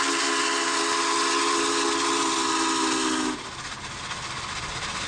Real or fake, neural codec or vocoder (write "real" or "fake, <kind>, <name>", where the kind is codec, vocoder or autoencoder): real